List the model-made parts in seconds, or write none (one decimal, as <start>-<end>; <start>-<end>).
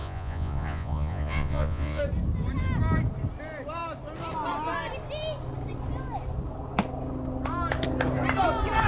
0.0-2.0